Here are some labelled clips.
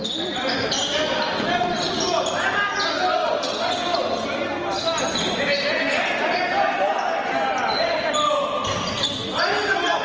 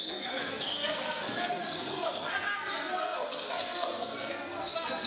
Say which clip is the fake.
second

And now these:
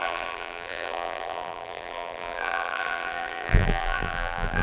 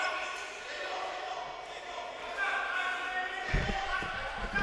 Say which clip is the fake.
first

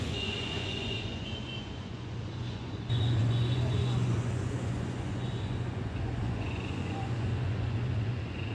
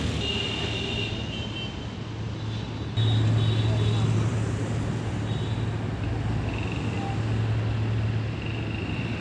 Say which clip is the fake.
first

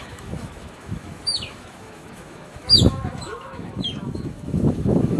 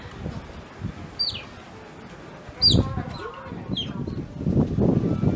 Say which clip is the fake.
first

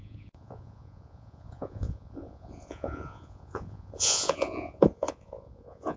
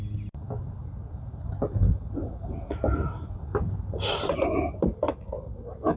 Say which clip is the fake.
first